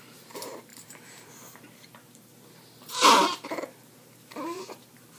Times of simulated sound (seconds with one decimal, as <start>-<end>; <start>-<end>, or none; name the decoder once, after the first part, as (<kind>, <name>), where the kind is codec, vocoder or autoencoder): 0.0-5.2 (vocoder, BigVGAN v2)